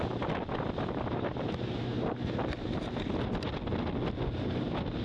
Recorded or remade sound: recorded